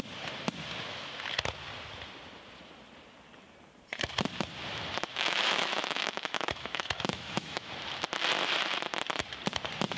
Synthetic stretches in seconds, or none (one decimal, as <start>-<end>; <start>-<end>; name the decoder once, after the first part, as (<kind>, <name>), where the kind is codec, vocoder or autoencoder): 5.1-7.7 (autoencoder, DAC-VAE)